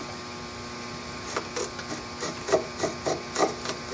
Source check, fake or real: real